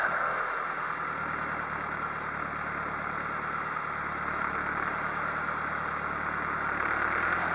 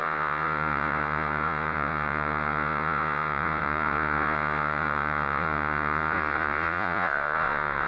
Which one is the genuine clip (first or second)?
first